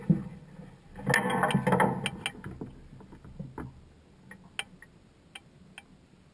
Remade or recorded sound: recorded